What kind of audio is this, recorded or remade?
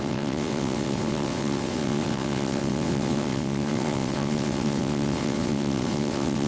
remade